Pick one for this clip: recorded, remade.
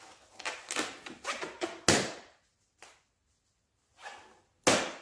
recorded